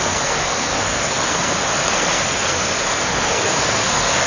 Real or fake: fake